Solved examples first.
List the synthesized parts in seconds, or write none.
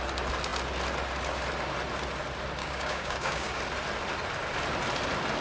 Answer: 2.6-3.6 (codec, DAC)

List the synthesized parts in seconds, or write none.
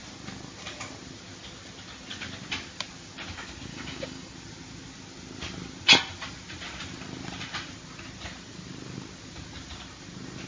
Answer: 3.7-4.3 (codec, DAC)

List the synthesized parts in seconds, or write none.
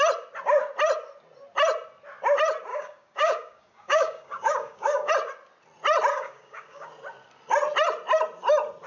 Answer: 2.7-5.1 (codec, DAC); 6.1-6.9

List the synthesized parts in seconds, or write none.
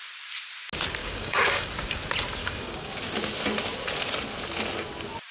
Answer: 1.0-1.7 (codec, DAC); 2.4-2.9